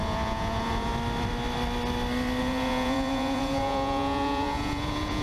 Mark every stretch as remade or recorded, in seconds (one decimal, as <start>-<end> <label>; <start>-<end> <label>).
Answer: 0.0-0.9 remade; 0.9-2.4 recorded; 2.4-5.2 remade

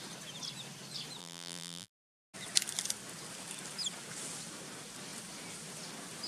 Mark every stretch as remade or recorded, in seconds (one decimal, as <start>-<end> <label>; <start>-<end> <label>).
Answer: 0.0-1.2 recorded; 1.2-2.3 remade; 2.3-6.3 recorded

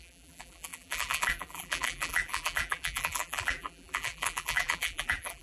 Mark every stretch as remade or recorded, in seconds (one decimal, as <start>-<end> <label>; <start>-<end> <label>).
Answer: 0.0-5.4 remade